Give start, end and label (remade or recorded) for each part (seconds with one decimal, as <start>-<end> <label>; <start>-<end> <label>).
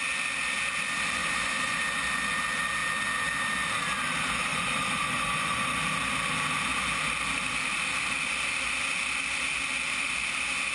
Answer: 0.0-1.2 recorded; 1.2-1.8 remade; 1.8-4.5 recorded; 4.5-5.8 remade; 5.8-10.7 recorded